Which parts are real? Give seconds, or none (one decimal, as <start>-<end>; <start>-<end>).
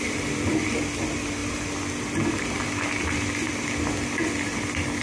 0.0-5.0